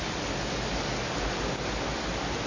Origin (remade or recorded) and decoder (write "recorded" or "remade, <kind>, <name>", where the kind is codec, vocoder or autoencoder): recorded